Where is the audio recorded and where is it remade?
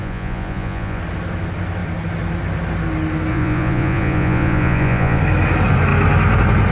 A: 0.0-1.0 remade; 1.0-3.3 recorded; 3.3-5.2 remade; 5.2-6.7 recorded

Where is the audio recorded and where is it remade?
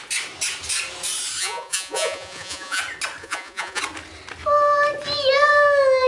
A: 0.0-1.4 recorded; 1.4-2.8 remade; 2.8-3.2 recorded; 3.2-3.8 remade; 3.8-6.1 recorded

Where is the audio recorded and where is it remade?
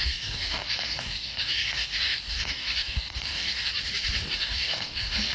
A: 0.0-3.7 remade; 3.7-4.3 recorded; 4.3-5.3 remade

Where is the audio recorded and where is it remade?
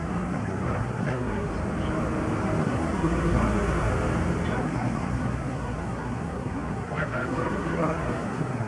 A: 0.0-1.5 remade; 1.5-2.6 recorded; 2.6-3.9 remade; 3.9-4.6 recorded; 4.6-8.7 remade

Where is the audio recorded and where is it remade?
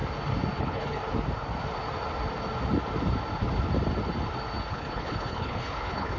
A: 0.0-0.6 recorded; 0.6-1.0 remade; 1.0-4.7 recorded; 4.7-6.2 remade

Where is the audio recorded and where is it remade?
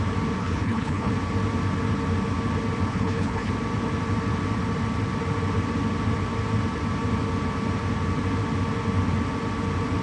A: 0.0-0.4 recorded; 0.4-1.1 remade; 1.1-2.9 recorded; 2.9-3.5 remade; 3.5-10.0 recorded